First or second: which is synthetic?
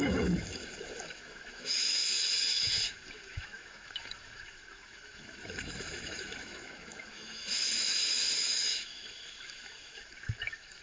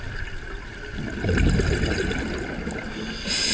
first